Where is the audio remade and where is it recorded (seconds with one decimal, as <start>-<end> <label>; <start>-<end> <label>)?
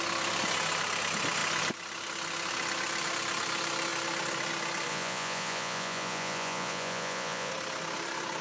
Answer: 0.0-4.9 recorded; 4.9-7.5 remade; 7.5-8.4 recorded